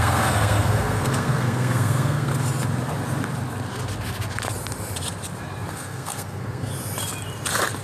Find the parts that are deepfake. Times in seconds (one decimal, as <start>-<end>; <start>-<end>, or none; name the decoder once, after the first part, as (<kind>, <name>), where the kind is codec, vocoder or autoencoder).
0.0-2.3 (codec, SNAC); 5.7-6.7